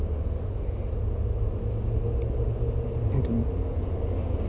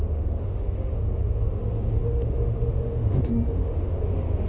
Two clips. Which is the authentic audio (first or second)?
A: first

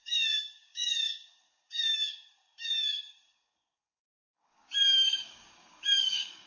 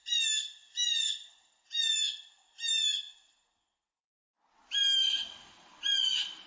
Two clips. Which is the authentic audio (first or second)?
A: second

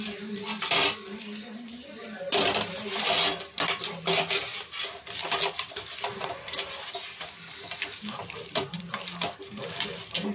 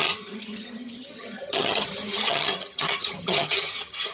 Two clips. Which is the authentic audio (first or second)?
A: first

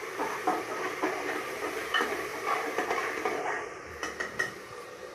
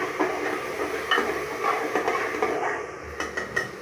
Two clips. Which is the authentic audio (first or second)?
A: second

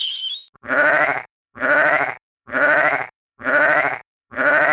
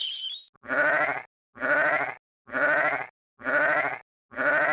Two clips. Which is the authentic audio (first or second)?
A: second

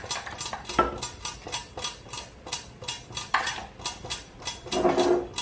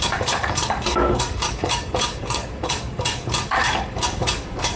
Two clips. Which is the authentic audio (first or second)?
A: first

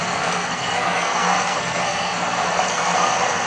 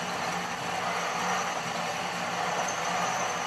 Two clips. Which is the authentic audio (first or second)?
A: second